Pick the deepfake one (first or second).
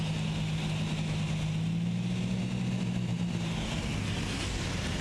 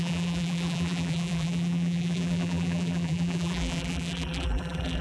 second